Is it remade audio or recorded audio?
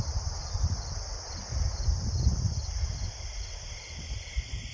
recorded